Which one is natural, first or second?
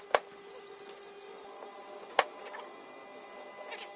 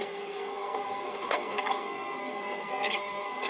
first